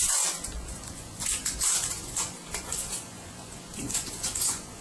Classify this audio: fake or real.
fake